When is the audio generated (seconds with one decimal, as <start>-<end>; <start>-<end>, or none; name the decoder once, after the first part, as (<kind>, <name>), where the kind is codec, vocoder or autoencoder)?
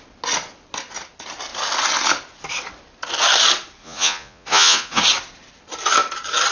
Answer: 3.8-5.0 (vocoder, Vocos)